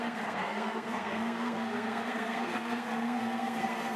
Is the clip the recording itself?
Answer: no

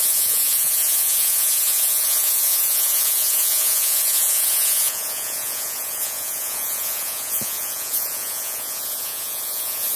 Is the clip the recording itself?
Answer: no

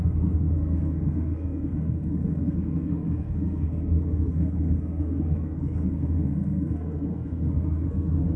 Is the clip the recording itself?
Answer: no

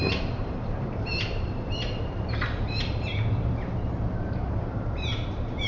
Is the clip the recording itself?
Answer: no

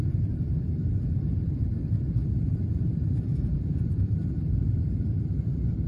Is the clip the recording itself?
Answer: no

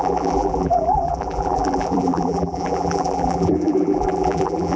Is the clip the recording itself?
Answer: no